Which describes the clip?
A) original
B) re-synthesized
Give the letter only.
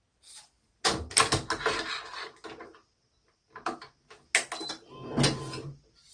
A